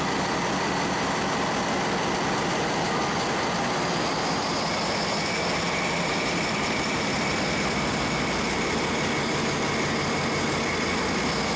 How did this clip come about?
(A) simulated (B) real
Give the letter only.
B